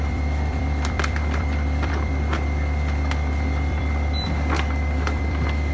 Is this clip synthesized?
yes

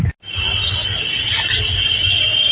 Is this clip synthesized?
no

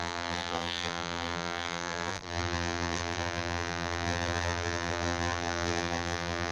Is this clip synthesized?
yes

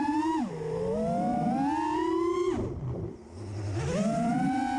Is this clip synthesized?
no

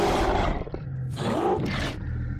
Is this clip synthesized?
no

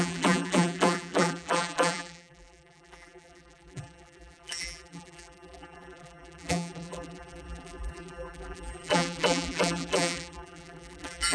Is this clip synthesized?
yes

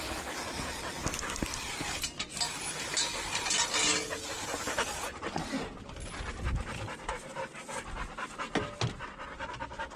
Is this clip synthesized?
no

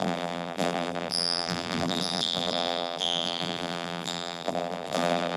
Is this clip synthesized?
yes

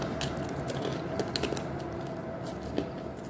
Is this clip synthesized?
no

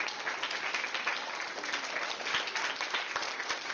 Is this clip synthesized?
no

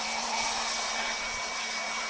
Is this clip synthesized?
yes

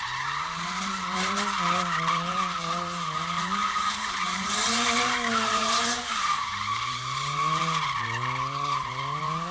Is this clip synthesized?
yes